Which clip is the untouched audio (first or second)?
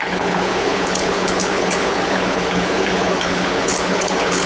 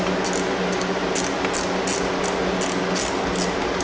second